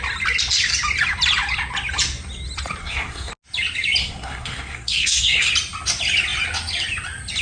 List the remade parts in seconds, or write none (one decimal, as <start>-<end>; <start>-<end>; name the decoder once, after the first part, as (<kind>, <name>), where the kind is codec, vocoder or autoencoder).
2.8-3.3 (codec, SNAC); 4.0-5.5